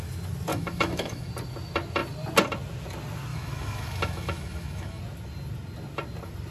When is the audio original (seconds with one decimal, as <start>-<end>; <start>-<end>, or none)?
0.0-0.5; 1.3-3.3; 5.0-6.5